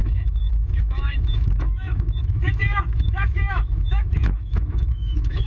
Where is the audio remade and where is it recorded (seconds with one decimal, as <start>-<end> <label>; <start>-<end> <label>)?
0.0-5.5 remade

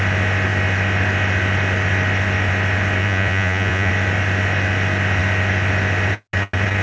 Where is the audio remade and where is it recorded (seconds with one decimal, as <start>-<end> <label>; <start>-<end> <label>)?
0.0-3.0 recorded; 3.0-3.9 remade; 3.9-6.8 recorded

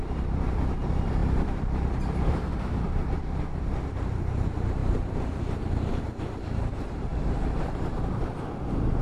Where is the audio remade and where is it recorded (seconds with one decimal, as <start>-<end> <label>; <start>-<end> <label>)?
0.0-9.0 remade

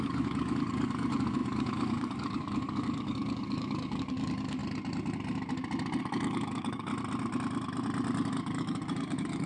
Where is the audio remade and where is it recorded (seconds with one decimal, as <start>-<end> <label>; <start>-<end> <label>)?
0.0-4.6 remade; 4.6-6.0 recorded; 6.0-6.9 remade; 6.9-8.3 recorded; 8.3-9.5 remade